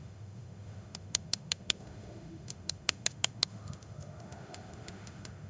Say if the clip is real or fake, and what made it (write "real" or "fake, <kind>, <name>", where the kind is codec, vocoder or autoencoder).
fake, autoencoder, DAC-VAE